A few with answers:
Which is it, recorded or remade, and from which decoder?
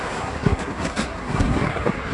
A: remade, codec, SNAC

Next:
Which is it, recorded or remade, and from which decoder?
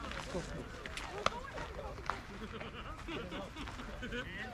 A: recorded